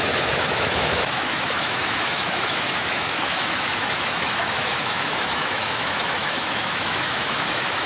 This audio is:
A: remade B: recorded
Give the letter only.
A